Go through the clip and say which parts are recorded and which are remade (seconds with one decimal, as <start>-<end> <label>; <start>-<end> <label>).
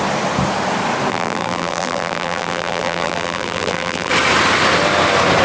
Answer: 0.0-1.1 recorded; 1.1-4.1 remade; 4.1-5.4 recorded